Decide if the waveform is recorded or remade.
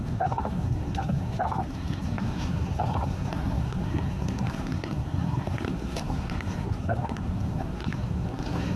remade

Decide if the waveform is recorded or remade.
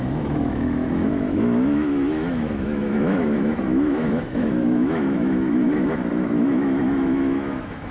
remade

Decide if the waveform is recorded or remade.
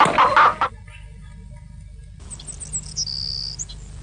recorded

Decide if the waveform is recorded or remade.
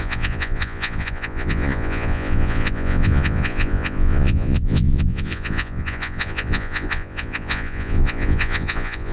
remade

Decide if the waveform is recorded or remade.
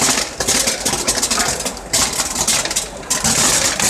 recorded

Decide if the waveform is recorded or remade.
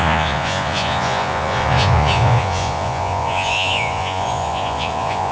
remade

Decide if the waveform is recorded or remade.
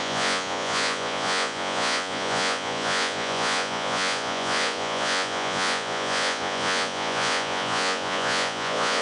remade